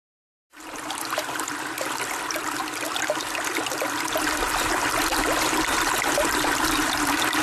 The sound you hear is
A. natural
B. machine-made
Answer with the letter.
A